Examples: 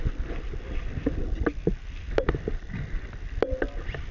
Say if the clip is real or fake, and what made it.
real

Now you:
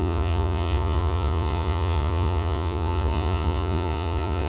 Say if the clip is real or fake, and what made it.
fake, vocoder, Vocos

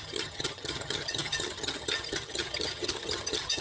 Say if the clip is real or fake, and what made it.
fake, vocoder, HiFi-GAN